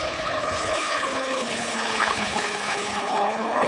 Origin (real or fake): fake